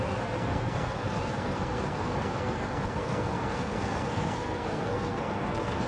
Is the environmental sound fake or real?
fake